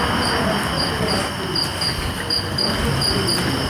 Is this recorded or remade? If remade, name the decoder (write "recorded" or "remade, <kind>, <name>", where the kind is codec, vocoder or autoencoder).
recorded